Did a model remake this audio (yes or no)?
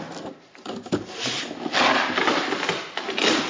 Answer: no